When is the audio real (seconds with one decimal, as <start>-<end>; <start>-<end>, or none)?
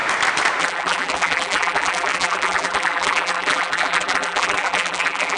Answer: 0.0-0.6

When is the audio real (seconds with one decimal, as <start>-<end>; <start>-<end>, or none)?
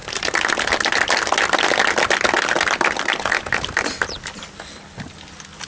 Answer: 0.0-5.7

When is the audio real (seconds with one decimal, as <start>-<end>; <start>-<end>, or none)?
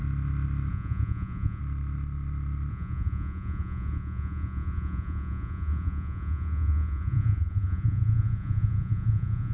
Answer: 0.0-0.7; 1.6-2.7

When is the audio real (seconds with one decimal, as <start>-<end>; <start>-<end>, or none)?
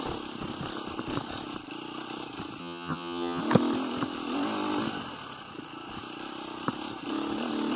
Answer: 0.0-2.6; 3.4-7.8